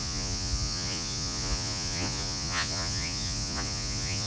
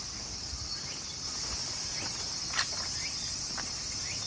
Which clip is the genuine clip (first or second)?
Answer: second